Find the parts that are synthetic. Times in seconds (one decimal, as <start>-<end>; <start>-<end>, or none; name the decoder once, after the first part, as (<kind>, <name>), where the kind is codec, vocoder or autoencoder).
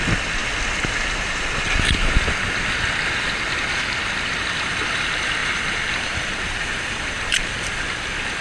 5.4-7.8 (vocoder, BigVGAN v2)